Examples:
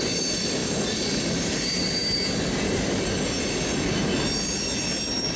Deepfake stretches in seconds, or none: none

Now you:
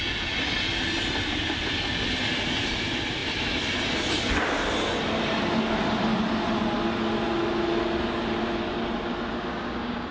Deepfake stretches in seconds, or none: 9.5-10.1 (codec, DAC)

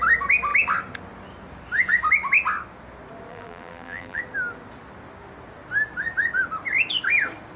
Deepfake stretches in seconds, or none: 3.3-4.2 (vocoder, BigVGAN v2)

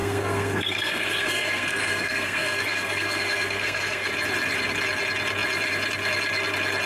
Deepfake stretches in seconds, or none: 0.0-4.1 (codec, SNAC)

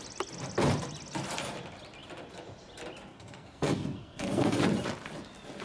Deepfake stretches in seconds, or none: 3.1-4.6 (codec, SNAC)

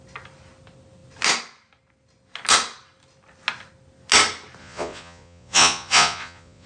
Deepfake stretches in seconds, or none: 4.6-6.7 (vocoder, Vocos)

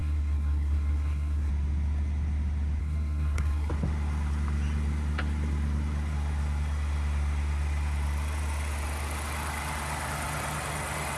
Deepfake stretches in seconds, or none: 0.0-1.5 (codec, SNAC); 2.8-3.7